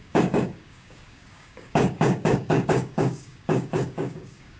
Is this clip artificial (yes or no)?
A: yes